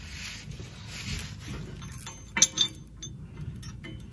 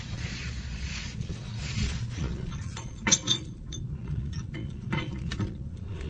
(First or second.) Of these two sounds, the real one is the first